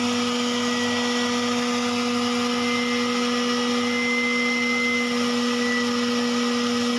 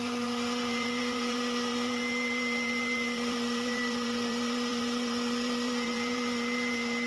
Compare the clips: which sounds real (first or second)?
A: first